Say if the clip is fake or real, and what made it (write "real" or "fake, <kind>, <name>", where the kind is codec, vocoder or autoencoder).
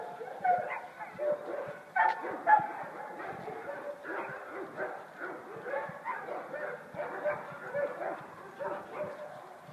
real